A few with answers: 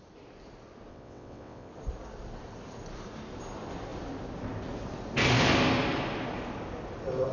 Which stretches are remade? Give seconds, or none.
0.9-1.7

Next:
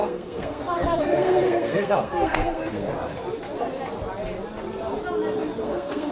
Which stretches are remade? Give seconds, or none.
0.0-2.9; 5.6-6.1

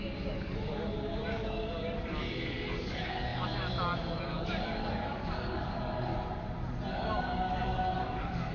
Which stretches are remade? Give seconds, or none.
0.0-6.1; 6.9-8.5

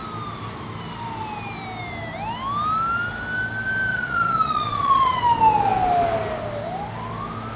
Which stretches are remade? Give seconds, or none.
3.9-5.2

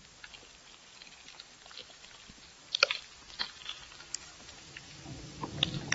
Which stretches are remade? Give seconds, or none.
none

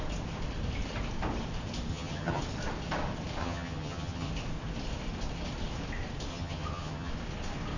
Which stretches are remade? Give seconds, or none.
1.9-2.4; 3.4-4.3; 6.3-7.1

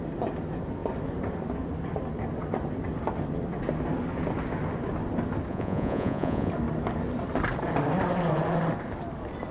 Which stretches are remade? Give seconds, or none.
5.5-6.5

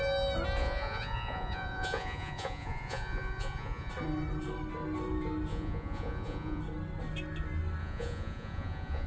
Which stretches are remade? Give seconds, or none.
0.6-3.9; 5.5-6.6; 7.8-9.1